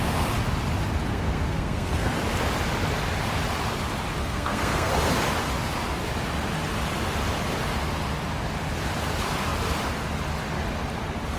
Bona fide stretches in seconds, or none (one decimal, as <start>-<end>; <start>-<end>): 0.0-1.1; 2.1-4.2; 4.9-11.4